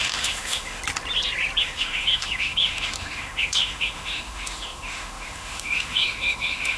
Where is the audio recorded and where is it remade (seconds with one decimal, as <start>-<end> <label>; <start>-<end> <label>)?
0.0-0.8 remade; 0.8-1.6 recorded; 1.6-6.8 remade